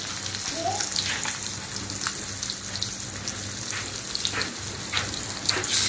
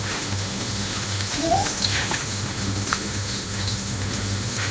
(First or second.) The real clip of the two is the first